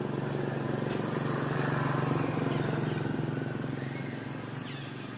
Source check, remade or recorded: recorded